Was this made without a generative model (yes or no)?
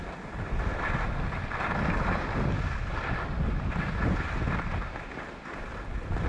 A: yes